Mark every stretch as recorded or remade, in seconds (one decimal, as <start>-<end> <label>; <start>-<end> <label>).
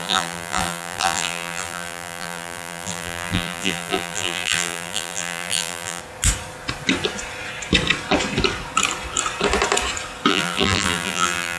0.0-6.0 remade; 6.0-10.3 recorded; 10.3-11.6 remade